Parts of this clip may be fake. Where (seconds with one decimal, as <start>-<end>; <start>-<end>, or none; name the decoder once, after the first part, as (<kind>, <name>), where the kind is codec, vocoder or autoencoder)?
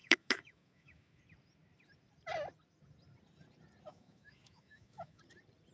0.0-1.2 (autoencoder, DAC-VAE); 3.9-5.2